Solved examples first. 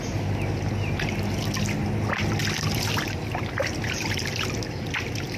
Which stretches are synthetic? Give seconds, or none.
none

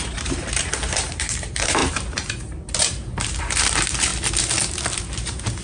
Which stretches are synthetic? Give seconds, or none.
0.0-4.1; 5.0-5.6

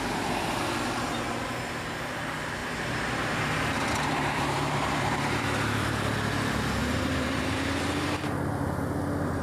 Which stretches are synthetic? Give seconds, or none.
2.6-5.9; 6.8-7.4